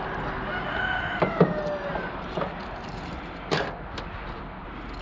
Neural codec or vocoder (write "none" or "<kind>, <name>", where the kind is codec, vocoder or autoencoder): none